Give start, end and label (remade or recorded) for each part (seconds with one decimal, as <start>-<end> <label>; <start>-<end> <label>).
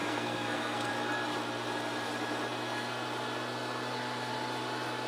0.0-0.9 remade; 0.9-5.1 recorded